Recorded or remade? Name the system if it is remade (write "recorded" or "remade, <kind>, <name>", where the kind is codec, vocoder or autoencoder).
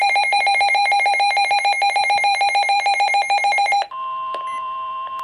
remade, vocoder, BigVGAN v2